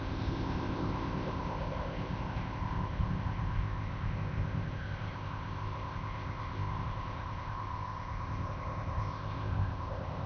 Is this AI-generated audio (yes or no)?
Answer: yes